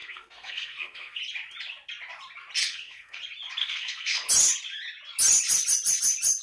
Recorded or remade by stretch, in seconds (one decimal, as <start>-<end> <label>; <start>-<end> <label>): 0.0-1.2 remade; 1.2-2.6 recorded; 2.6-3.2 remade; 3.2-3.6 recorded; 3.6-4.3 remade; 4.3-6.4 recorded